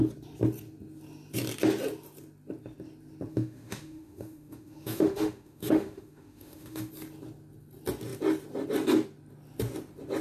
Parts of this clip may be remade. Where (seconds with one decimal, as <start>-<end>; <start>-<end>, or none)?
3.3-6.9